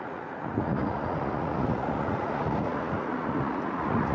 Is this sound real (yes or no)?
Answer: no